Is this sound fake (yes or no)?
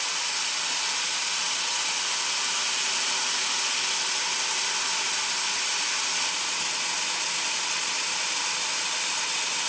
no